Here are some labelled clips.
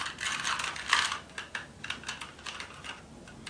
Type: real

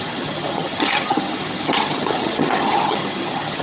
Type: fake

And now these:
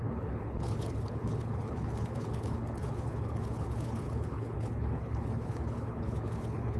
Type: fake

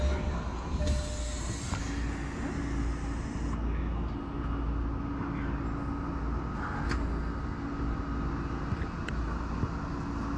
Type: real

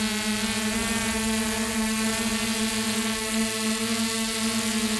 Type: real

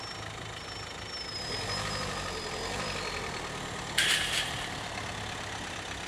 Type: fake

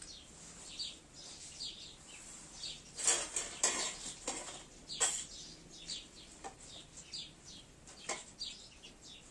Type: real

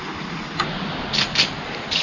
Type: real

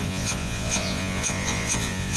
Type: fake